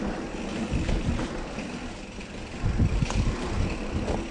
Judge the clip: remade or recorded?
recorded